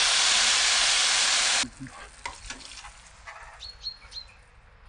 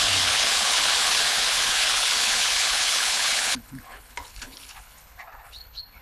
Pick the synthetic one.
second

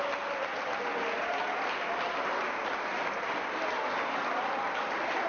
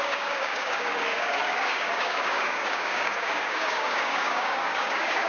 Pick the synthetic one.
second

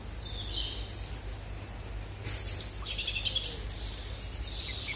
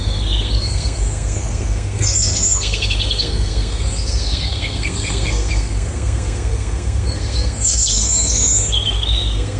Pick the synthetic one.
second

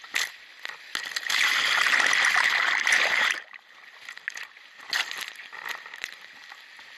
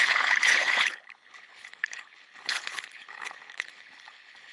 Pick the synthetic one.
second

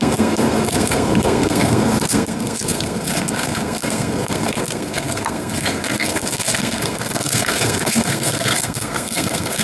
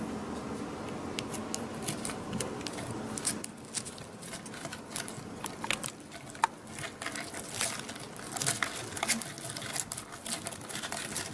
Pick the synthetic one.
first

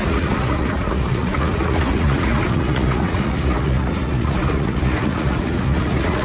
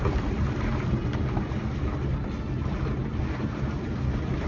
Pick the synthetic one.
first